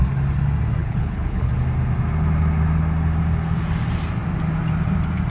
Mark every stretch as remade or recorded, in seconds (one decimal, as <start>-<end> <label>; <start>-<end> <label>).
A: 0.0-0.8 recorded; 0.8-1.5 remade; 1.5-5.3 recorded